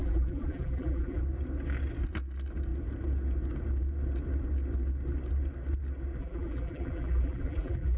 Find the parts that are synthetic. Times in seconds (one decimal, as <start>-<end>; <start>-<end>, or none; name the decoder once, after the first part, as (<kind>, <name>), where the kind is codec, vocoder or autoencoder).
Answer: 0.0-1.2 (vocoder, BigVGAN v2); 6.2-8.0

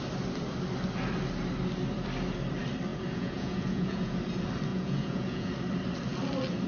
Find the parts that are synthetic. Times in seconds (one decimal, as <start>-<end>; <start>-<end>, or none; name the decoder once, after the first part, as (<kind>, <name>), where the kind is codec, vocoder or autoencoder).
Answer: 2.9-4.2 (vocoder, Vocos); 4.7-5.5

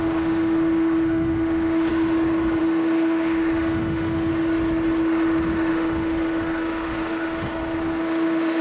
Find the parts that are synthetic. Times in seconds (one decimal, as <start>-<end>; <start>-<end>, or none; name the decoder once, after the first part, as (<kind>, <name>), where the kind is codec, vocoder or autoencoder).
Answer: 0.0-1.9 (autoencoder, DAC-VAE); 2.6-4.3; 5.7-8.6

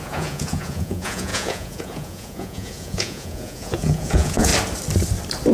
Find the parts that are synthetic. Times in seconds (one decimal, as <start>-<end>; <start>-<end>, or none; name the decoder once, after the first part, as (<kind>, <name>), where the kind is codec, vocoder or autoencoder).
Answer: 0.0-4.5 (vocoder, Vocos)

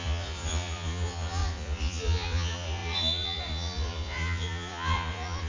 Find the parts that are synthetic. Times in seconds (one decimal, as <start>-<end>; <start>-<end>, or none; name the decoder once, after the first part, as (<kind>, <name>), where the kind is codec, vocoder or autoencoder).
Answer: 0.0-5.5 (vocoder, Vocos)

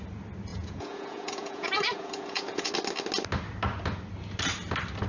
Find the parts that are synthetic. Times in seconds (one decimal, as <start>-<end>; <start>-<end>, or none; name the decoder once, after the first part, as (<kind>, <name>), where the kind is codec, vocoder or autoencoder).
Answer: 0.5-2.7 (vocoder, Vocos)